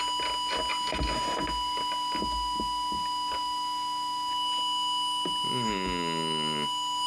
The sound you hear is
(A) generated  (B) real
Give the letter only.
B